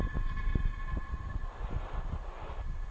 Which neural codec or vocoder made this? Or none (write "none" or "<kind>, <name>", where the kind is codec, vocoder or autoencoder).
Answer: none